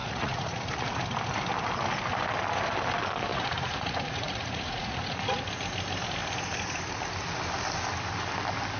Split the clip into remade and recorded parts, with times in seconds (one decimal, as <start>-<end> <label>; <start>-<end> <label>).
0.0-1.0 remade; 1.0-3.3 recorded; 3.3-5.4 remade; 5.4-8.8 recorded